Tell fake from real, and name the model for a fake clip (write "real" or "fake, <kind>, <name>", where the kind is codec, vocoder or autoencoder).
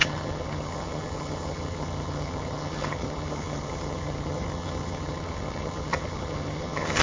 fake, vocoder, HiFi-GAN